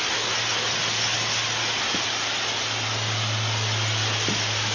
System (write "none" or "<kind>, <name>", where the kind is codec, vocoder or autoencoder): none